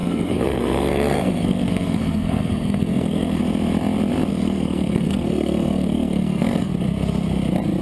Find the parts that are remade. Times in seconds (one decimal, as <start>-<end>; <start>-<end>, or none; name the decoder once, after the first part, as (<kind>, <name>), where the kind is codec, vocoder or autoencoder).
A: 0.0-3.4 (codec, SNAC); 4.3-6.7

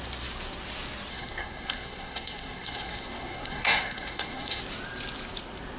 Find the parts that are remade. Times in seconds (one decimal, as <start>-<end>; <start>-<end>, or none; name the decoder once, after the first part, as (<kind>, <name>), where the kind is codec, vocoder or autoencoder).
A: 1.1-4.6 (codec, SNAC)

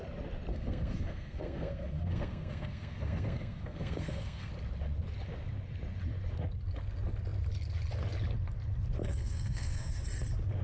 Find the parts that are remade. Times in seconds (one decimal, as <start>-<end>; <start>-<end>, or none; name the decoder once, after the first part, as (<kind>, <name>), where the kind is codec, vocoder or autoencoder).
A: 0.5-4.5 (codec, SNAC); 9.0-10.0

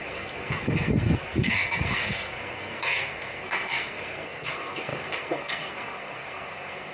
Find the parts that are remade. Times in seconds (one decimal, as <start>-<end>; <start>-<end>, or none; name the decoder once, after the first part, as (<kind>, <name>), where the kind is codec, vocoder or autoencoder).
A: 0.0-6.9 (codec, SNAC)